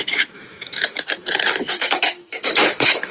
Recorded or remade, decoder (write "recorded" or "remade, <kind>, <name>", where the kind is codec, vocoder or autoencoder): remade, autoencoder, DAC-VAE